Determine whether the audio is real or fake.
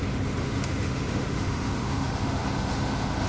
fake